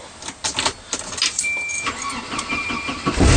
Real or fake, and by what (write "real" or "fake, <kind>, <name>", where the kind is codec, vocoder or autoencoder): real